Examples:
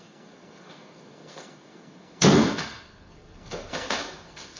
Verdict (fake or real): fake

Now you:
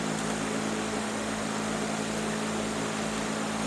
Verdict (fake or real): real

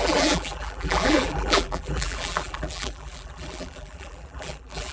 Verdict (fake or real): fake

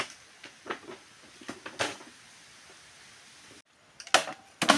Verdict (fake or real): real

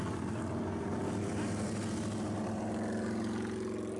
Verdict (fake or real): real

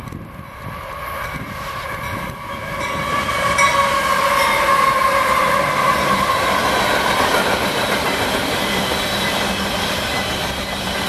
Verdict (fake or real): fake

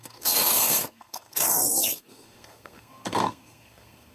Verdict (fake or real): fake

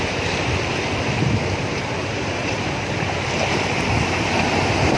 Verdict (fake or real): real